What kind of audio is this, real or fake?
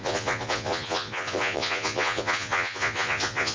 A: fake